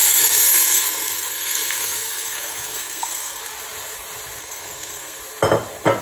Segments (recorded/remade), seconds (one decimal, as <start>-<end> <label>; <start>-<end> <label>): 0.0-3.4 remade; 3.4-4.4 recorded; 4.4-5.2 remade; 5.2-6.0 recorded